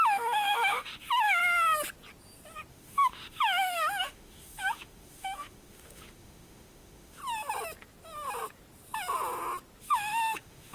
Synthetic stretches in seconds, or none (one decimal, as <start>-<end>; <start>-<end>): 0.0-1.4; 2.7-7.2; 9.8-10.7